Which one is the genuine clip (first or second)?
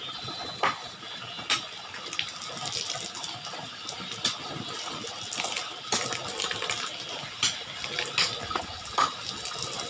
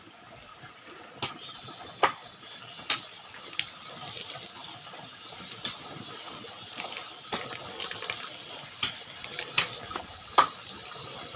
first